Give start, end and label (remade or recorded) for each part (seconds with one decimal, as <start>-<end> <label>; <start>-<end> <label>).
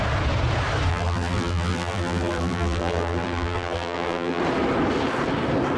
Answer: 0.0-0.9 recorded; 0.9-4.4 remade; 4.4-5.8 recorded